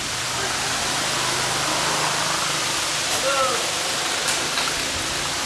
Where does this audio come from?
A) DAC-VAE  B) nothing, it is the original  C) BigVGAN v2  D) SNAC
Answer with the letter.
B